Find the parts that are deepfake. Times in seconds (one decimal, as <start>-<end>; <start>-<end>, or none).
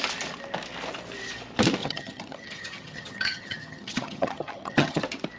1.8-5.0